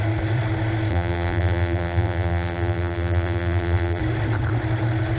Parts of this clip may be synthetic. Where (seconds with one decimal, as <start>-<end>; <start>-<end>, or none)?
0.9-4.0